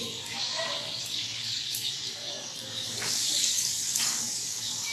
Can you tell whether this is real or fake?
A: fake